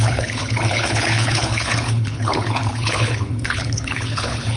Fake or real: fake